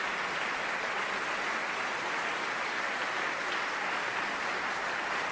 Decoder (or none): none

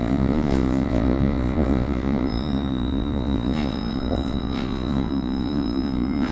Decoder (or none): vocoder, Vocos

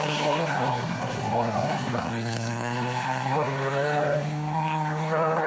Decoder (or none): codec, SNAC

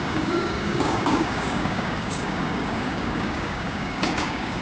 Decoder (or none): codec, DAC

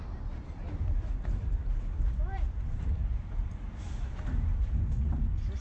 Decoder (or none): vocoder, BigVGAN v2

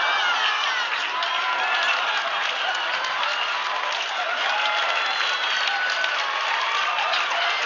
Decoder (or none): none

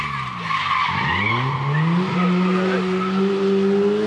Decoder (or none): none